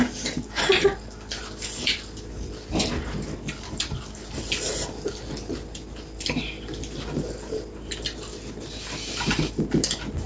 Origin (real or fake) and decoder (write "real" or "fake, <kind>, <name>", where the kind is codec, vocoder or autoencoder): real